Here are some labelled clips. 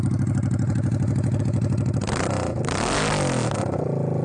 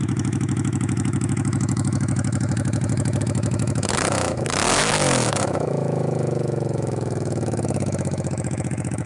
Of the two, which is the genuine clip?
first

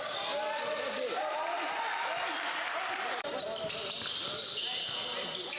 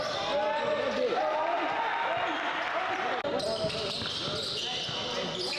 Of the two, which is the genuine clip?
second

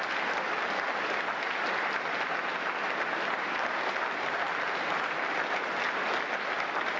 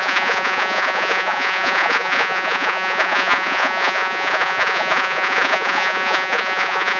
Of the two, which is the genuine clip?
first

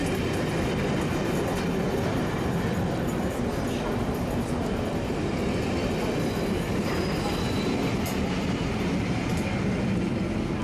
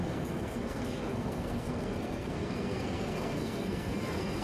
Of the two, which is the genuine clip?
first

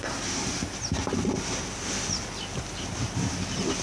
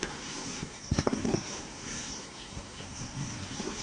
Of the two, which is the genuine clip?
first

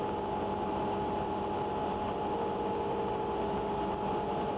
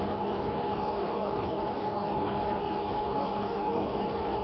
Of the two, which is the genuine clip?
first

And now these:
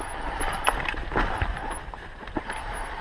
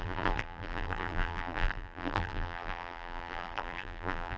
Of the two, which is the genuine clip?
first